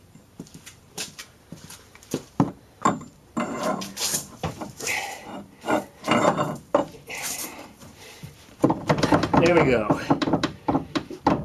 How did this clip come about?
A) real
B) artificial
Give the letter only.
B